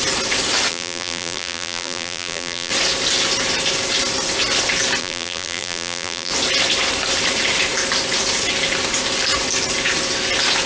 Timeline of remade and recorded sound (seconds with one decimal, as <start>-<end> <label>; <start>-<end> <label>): 0.0-0.7 recorded; 0.7-2.7 remade; 2.7-5.0 recorded; 5.0-6.3 remade; 6.3-10.7 recorded